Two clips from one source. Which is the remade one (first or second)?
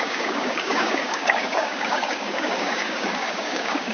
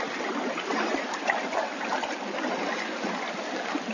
first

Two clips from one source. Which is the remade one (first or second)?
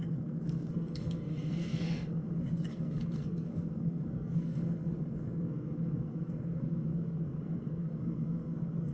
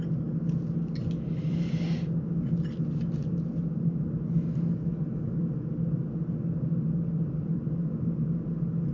first